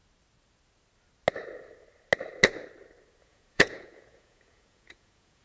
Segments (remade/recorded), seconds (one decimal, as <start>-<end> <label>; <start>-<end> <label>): 0.0-3.2 recorded; 3.2-5.4 remade